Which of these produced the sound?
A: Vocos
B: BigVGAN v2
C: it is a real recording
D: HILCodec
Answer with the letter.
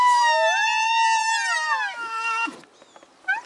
C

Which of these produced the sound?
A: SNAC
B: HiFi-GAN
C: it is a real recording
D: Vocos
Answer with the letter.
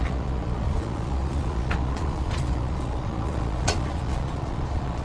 D